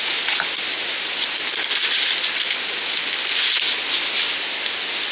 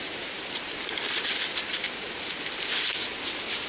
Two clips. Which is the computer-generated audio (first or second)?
second